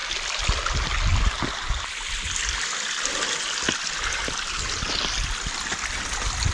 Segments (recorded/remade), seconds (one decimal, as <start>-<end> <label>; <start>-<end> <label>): 0.0-6.5 recorded